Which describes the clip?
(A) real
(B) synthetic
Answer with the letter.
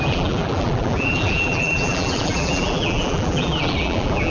B